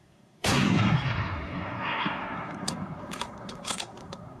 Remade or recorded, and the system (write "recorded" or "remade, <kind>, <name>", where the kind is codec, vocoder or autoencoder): remade, codec, SNAC